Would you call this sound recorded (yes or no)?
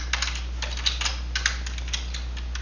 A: yes